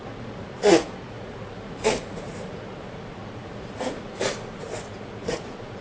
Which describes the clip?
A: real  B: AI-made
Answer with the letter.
B